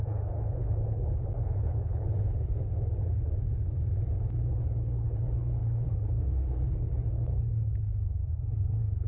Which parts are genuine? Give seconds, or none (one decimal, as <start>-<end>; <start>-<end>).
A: 2.7-4.5